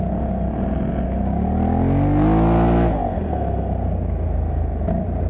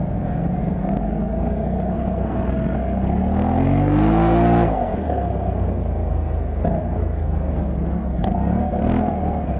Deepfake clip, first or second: second